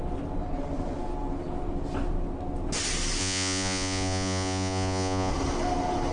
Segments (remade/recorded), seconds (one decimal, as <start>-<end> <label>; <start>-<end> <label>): 0.0-3.2 recorded; 3.2-5.3 remade; 5.3-6.1 recorded